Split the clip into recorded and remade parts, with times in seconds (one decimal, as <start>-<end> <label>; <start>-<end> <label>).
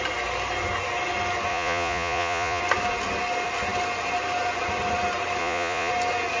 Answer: 0.0-1.5 recorded; 1.5-2.6 remade; 2.6-5.4 recorded; 5.4-5.9 remade; 5.9-6.4 recorded